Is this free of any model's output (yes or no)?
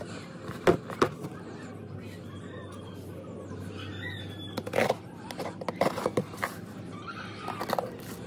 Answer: yes